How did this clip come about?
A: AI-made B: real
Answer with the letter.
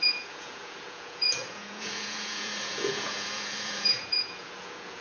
A